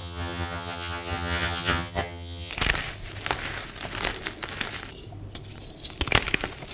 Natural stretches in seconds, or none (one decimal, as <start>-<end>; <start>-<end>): 2.5-6.7